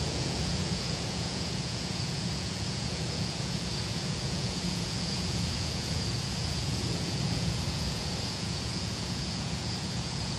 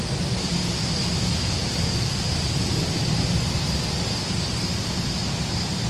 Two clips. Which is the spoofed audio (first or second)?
first